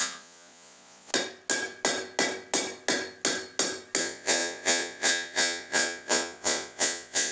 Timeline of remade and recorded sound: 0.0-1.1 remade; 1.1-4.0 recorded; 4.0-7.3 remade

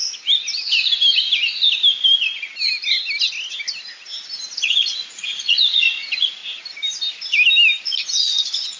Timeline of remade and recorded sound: 0.0-4.7 recorded; 4.7-6.4 remade; 6.4-7.8 recorded; 7.8-8.8 remade

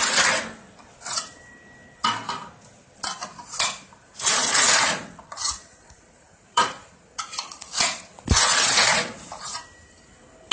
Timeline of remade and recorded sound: 0.0-4.1 recorded; 4.1-8.2 remade; 8.2-10.5 recorded

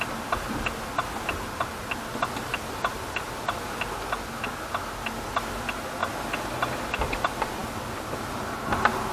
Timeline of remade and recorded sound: 0.0-9.1 recorded

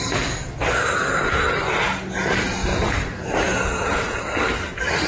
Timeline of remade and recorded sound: 0.0-2.7 recorded; 2.7-4.2 remade; 4.2-5.1 recorded

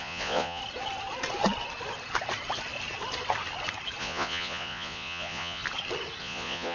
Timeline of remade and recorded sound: 0.0-0.6 remade; 0.6-4.0 recorded; 4.0-5.6 remade; 5.6-6.2 recorded; 6.2-6.7 remade

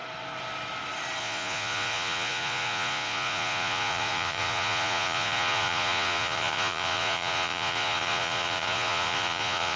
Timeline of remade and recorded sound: 0.0-1.2 recorded; 1.2-9.8 remade